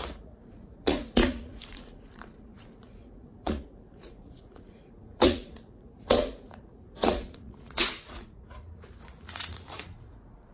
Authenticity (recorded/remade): remade